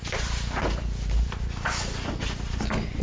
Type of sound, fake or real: real